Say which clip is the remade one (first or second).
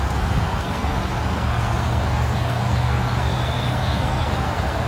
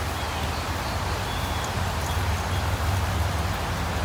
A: first